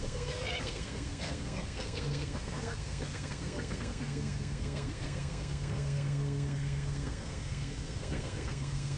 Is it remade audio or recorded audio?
remade